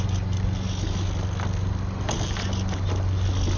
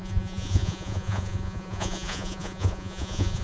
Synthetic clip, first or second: second